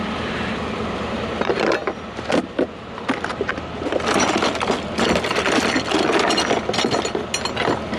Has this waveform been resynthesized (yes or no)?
no